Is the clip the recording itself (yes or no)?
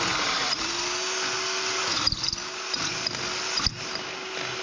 yes